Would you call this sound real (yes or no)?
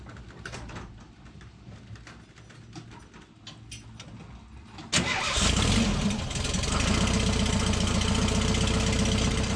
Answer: yes